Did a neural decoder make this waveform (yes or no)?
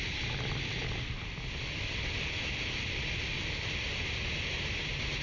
no